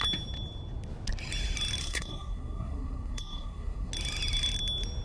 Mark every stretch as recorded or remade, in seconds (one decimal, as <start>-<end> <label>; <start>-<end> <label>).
0.0-1.8 recorded; 1.8-3.9 remade; 3.9-5.0 recorded